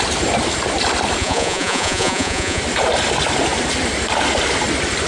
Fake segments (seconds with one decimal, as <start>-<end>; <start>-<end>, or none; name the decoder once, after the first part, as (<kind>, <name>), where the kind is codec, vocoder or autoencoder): 1.2-2.6 (vocoder, Vocos)